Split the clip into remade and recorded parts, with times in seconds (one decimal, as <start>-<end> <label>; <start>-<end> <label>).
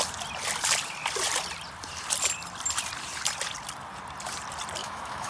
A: 0.0-4.8 recorded; 4.8-5.3 remade